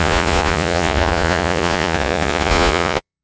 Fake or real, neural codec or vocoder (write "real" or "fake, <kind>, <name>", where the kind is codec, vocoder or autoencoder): fake, vocoder, Vocos